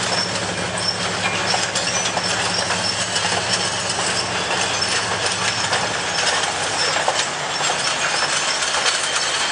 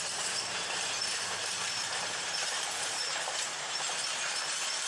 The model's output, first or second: second